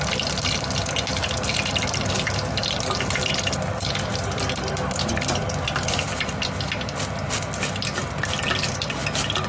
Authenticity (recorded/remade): recorded